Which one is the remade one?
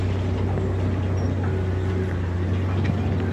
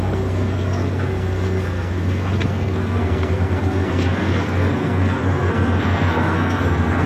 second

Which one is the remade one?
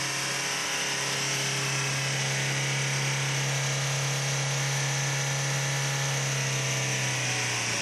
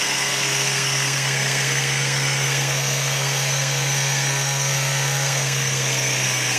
second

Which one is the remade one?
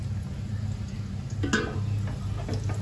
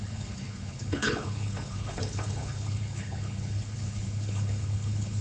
second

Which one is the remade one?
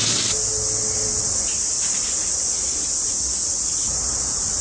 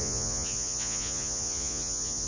second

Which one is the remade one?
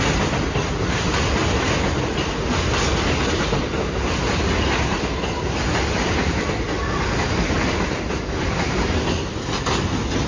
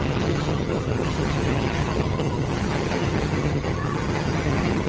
second